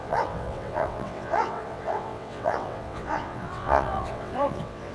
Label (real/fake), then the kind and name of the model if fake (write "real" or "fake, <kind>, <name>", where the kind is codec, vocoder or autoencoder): fake, vocoder, WaveNeXt